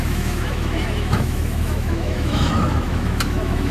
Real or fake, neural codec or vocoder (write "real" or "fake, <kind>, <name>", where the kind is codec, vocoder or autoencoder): fake, autoencoder, DAC-VAE